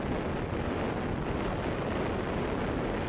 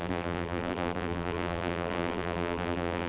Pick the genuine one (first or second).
first